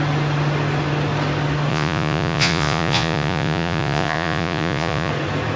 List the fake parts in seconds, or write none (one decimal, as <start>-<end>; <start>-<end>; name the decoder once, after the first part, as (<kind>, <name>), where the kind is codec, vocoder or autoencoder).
1.7-5.1 (vocoder, Vocos)